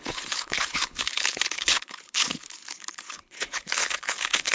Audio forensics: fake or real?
fake